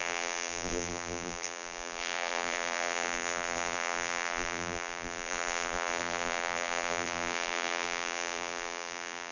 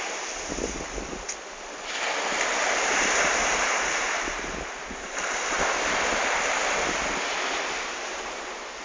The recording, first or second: second